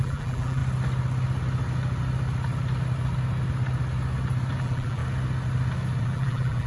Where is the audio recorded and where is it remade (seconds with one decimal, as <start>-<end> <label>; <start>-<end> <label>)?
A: 0.0-0.6 remade; 0.6-4.6 recorded; 4.6-5.0 remade; 5.0-6.0 recorded; 6.0-6.7 remade